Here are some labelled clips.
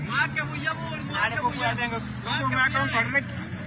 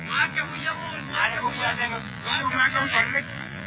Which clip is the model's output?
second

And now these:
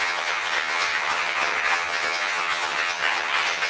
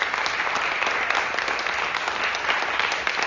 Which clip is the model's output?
first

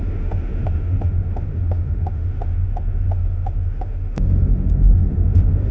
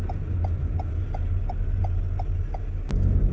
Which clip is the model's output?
first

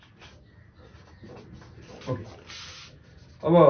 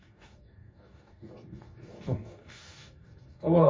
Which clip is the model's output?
second